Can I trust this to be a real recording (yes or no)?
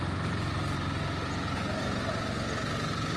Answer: yes